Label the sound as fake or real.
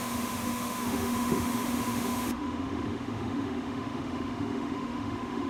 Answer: fake